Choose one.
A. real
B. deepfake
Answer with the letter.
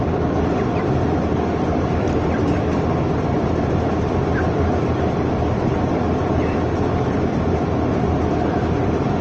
B